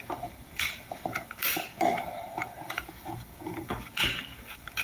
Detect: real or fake fake